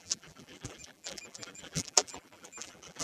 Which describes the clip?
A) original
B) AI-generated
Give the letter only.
B